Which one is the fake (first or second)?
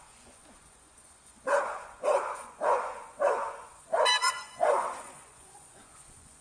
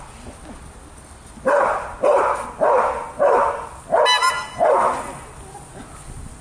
first